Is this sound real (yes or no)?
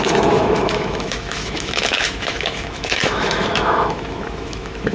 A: no